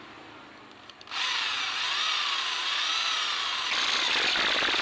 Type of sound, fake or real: fake